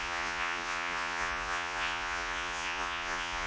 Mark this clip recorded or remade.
remade